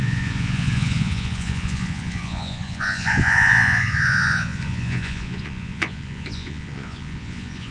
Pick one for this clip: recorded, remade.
remade